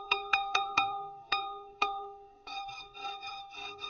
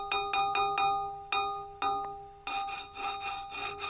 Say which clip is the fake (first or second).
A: first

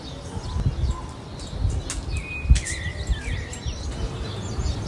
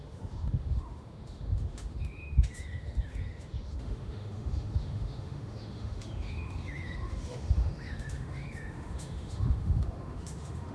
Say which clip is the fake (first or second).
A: second